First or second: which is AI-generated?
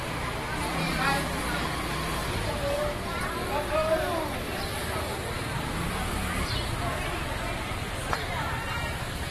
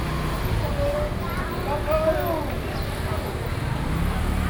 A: first